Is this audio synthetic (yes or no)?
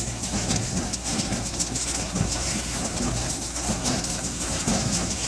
yes